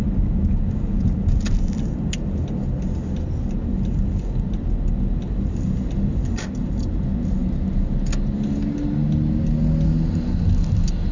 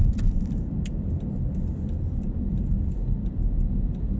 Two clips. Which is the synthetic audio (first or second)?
second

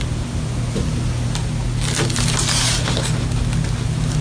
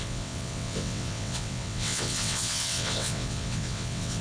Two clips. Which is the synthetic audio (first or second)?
second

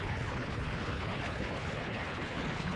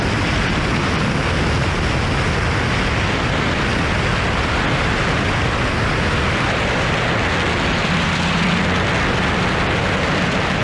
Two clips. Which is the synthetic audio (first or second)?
first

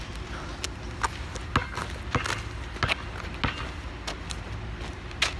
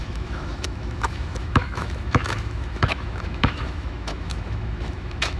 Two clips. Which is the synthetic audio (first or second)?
second